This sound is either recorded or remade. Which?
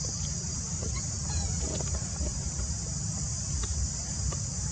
remade